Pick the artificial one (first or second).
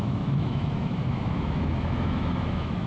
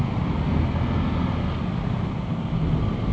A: first